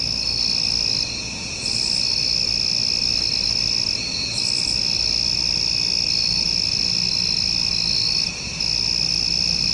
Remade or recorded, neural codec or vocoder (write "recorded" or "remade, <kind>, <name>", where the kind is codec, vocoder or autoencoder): recorded